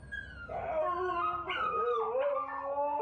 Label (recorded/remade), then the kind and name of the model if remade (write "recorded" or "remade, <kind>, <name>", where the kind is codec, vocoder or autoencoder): recorded